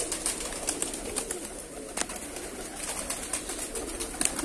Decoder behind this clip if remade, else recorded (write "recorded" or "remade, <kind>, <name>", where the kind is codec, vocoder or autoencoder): recorded